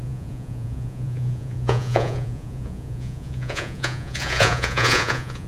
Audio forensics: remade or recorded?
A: remade